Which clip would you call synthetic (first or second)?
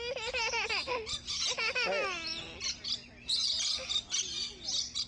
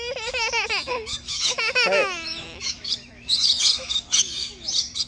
second